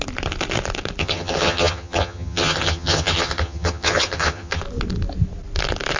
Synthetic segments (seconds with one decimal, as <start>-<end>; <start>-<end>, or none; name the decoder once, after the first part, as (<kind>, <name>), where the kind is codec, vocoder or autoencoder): 1.0-4.6 (vocoder, HiFi-GAN)